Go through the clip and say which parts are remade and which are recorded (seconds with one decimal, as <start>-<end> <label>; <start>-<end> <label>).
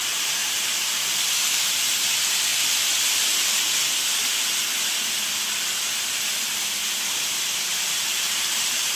0.0-3.8 remade; 3.8-7.8 recorded; 7.8-9.0 remade